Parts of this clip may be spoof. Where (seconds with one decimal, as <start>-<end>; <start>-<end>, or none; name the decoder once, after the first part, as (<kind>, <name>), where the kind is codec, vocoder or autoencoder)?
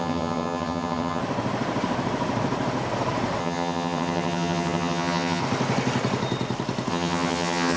0.0-1.2 (vocoder, HiFi-GAN); 3.4-5.4; 6.9-7.8